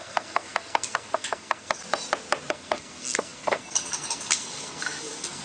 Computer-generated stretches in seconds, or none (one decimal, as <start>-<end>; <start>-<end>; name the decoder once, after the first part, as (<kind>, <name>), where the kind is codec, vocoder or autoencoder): 0.0-1.8 (codec, SNAC); 2.5-5.4